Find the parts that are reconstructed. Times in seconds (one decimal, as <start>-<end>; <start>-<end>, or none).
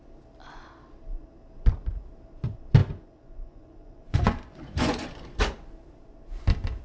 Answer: 2.8-5.1